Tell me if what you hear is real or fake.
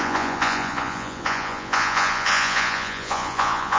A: fake